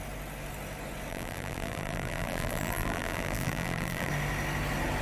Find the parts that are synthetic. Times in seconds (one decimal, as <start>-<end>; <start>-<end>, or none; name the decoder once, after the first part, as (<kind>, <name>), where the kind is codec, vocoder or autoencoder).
1.1-4.1 (vocoder, BigVGAN v2)